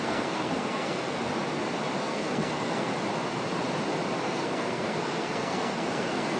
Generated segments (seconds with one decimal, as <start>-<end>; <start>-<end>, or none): 0.0-1.2; 2.0-2.9; 4.2-6.4